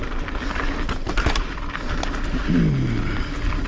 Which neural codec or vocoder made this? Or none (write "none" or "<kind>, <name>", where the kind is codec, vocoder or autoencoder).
none